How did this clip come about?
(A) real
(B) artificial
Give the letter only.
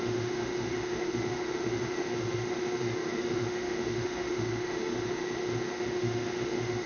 B